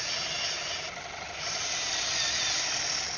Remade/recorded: recorded